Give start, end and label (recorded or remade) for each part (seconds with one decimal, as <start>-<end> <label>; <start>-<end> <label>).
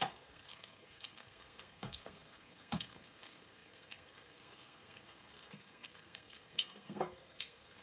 0.0-7.8 remade